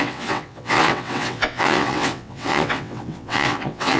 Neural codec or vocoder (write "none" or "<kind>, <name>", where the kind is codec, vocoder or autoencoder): vocoder, WaveNeXt